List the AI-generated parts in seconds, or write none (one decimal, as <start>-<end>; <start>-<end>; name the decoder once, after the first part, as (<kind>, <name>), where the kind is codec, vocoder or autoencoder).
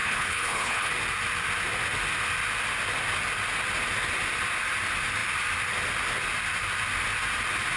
0.0-0.9 (codec, HILCodec)